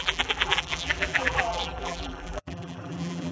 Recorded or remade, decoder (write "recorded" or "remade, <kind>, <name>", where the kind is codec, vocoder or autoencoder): remade, vocoder, BigVGAN v2